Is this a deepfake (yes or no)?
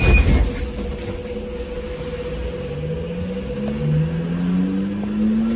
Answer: no